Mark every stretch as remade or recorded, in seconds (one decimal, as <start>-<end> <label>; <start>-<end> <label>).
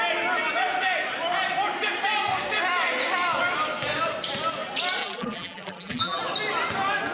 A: 0.0-5.0 recorded; 5.0-6.2 remade; 6.2-7.1 recorded